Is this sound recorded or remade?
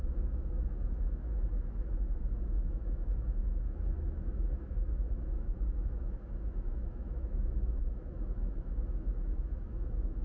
remade